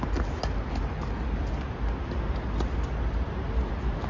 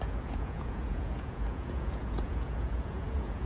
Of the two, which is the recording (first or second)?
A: first